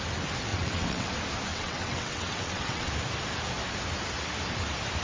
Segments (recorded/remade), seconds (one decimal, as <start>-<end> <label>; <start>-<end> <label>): 0.0-0.5 recorded; 0.5-1.1 remade; 1.1-1.5 recorded; 1.5-2.9 remade; 2.9-5.0 recorded